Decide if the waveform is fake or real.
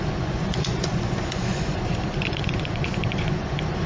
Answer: fake